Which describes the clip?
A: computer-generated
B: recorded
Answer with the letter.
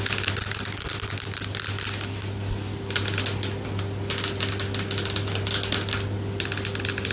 B